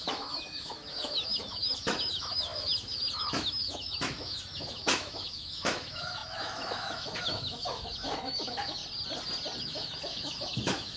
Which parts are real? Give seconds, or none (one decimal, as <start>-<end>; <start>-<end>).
8.8-9.6